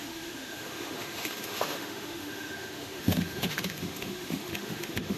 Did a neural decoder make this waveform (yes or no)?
yes